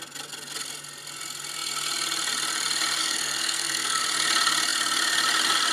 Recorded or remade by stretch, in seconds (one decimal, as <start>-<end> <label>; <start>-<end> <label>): 0.0-3.0 recorded; 3.0-4.0 remade; 4.0-5.7 recorded